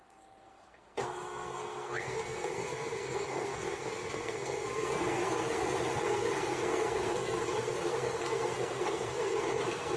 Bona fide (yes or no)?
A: no